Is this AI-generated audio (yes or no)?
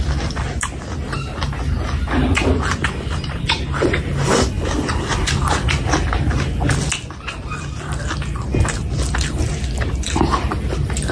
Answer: no